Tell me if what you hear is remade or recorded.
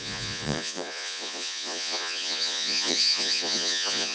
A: remade